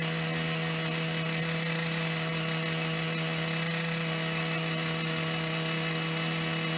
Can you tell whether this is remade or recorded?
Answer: recorded